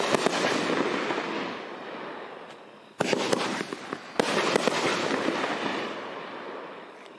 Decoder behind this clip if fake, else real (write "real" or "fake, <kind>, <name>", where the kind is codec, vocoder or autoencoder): real